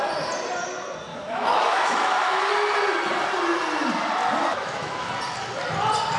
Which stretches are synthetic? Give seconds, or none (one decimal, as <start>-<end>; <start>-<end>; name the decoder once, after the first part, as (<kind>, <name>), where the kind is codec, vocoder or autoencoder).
1.1-2.5 (autoencoder, DAC-VAE); 4.5-5.1

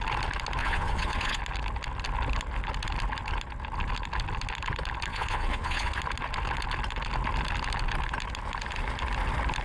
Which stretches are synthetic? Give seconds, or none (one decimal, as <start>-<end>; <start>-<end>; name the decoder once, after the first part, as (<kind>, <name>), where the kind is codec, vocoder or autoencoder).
0.6-1.4 (vocoder, Vocos); 5.1-6.0

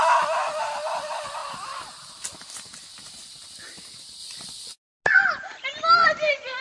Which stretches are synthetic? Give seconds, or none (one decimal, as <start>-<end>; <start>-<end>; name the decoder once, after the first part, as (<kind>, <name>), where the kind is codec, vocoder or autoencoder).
none

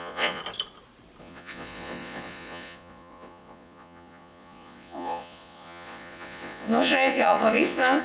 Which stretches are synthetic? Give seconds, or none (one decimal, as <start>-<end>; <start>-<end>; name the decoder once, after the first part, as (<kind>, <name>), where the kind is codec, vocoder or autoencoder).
0.0-0.4 (vocoder, Vocos); 1.2-8.0

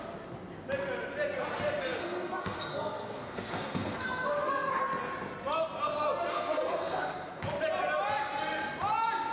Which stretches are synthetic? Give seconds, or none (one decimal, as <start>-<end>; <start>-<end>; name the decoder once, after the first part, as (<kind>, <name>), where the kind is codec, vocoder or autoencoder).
2.0-4.8 (codec, SNAC); 6.3-7.4